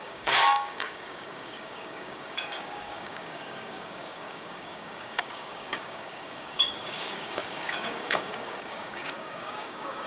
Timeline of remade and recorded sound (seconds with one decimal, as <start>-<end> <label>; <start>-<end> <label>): 0.0-10.1 remade